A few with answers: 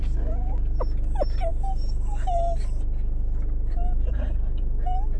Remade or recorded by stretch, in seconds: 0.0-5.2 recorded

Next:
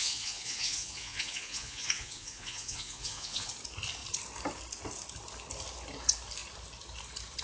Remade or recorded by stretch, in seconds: 0.0-3.5 remade; 3.5-7.4 recorded